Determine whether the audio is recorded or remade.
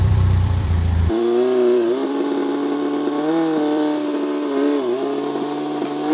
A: remade